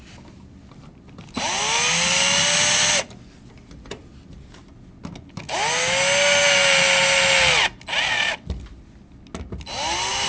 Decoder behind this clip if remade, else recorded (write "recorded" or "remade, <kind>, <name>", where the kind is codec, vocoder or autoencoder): recorded